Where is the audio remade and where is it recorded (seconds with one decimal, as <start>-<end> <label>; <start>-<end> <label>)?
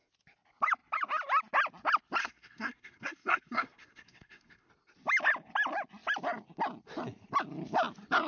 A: 0.0-2.2 recorded; 2.2-4.7 remade; 4.7-8.3 recorded